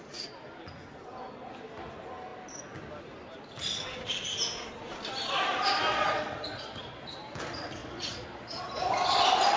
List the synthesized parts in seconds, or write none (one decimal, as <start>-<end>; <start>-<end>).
5.9-7.1; 7.8-8.8